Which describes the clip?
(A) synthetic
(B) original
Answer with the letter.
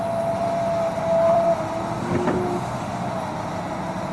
A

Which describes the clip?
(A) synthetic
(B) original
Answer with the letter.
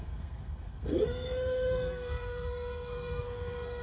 A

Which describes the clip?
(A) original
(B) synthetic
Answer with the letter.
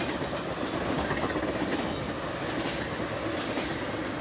A